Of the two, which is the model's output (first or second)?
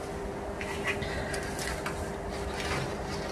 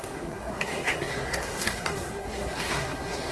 second